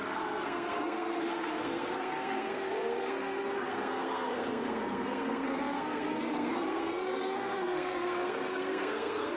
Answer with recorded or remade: remade